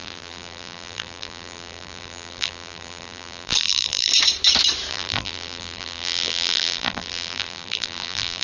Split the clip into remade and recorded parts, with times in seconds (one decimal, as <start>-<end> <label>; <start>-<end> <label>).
0.0-4.1 remade; 4.1-4.9 recorded; 4.9-8.4 remade